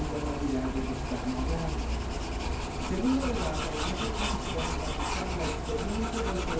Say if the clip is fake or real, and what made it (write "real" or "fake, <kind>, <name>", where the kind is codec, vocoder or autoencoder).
real